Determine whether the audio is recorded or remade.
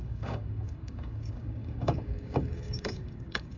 remade